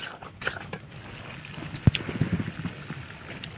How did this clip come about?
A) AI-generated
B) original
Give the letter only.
B